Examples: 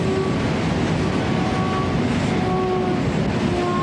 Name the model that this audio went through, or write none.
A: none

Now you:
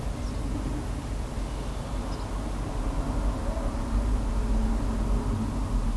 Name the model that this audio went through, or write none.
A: none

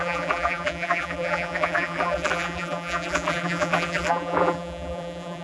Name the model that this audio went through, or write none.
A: vocoder, BigVGAN v2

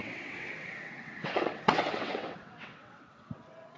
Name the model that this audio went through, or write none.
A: vocoder, WaveNeXt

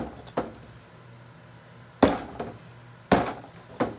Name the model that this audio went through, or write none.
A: none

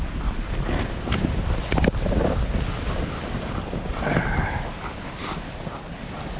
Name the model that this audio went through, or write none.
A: none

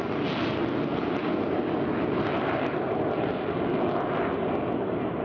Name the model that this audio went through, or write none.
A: none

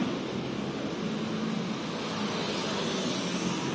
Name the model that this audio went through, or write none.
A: none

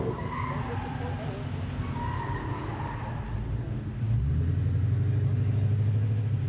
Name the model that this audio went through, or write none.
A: none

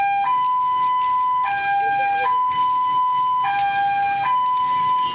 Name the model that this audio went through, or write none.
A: none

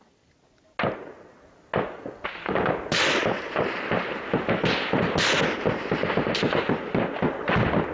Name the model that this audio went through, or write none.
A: none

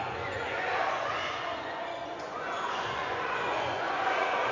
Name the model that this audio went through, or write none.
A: vocoder, Vocos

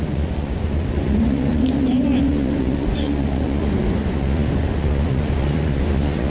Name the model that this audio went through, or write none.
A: vocoder, Vocos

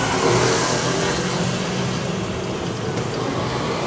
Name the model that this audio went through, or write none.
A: none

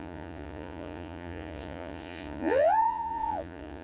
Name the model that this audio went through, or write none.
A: vocoder, Vocos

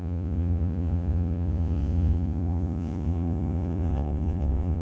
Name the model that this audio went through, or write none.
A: vocoder, Vocos